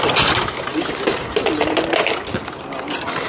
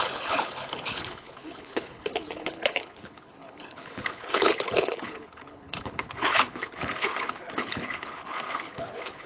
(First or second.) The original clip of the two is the first